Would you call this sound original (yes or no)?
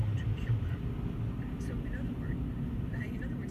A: yes